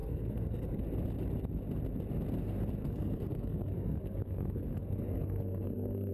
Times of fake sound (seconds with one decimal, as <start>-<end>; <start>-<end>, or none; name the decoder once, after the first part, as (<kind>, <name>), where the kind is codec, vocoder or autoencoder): 0.0-0.8 (codec, SNAC); 2.8-6.1